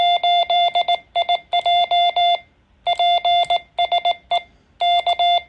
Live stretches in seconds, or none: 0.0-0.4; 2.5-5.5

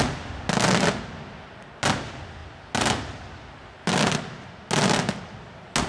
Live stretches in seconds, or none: 0.0-5.9

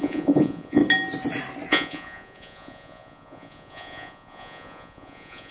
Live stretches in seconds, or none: 0.8-1.7